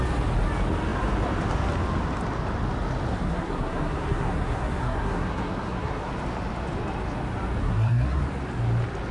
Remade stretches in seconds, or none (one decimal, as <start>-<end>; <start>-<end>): 3.1-6.1; 7.6-8.2